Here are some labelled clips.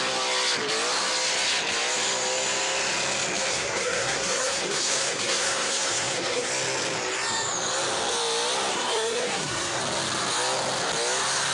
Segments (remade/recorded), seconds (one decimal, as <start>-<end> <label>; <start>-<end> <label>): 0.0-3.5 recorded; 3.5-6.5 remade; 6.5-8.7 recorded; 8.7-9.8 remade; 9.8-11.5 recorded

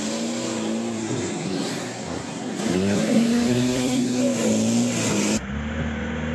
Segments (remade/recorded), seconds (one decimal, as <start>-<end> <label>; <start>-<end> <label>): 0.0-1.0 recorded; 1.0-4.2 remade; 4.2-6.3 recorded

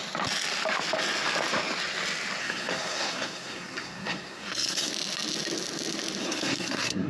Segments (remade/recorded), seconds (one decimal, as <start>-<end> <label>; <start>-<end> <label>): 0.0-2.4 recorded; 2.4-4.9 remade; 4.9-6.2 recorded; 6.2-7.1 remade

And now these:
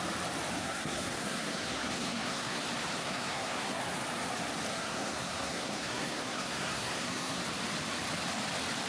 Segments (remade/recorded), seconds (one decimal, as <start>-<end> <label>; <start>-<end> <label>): 0.0-0.6 recorded; 0.6-2.6 remade; 2.6-3.0 recorded; 3.0-3.8 remade; 3.8-4.7 recorded; 4.7-7.4 remade; 7.4-8.9 recorded